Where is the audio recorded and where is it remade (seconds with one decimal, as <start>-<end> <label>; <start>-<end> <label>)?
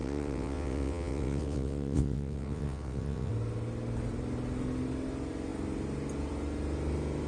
0.0-3.3 remade; 3.3-7.3 recorded